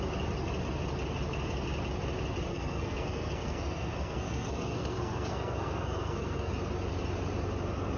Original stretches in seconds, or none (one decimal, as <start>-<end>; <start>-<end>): 0.0-2.5; 6.5-8.0